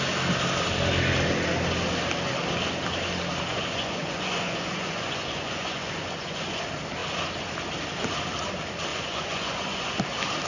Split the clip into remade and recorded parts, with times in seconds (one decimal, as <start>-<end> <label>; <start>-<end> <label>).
0.0-3.5 recorded; 3.5-6.6 remade; 6.6-8.9 recorded; 8.9-9.9 remade; 9.9-10.5 recorded